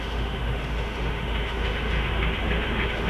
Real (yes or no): no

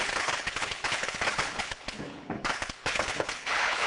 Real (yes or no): no